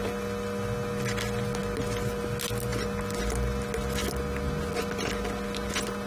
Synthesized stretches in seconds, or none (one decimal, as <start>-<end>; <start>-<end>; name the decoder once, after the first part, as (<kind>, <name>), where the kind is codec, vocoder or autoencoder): none